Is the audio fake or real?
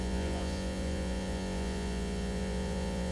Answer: fake